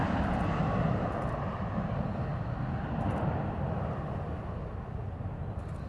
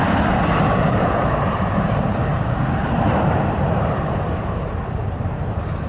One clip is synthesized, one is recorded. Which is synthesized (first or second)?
second